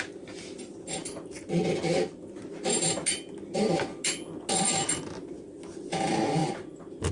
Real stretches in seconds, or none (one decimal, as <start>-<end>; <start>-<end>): 0.0-7.1